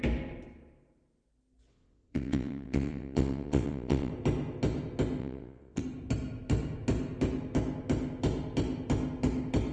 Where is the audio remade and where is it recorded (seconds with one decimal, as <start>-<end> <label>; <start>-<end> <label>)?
0.0-1.7 recorded; 1.7-4.1 remade; 4.1-5.2 recorded; 5.2-5.8 remade; 5.8-9.7 recorded